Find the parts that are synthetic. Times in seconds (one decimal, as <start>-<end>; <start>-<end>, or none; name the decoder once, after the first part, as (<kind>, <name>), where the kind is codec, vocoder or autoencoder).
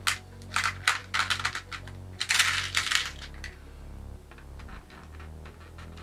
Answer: none